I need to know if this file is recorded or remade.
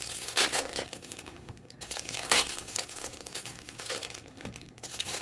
remade